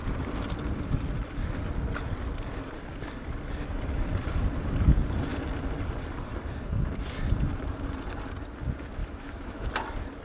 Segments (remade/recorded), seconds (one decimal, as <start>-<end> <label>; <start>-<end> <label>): 0.0-9.0 recorded; 9.0-9.7 remade; 9.7-10.2 recorded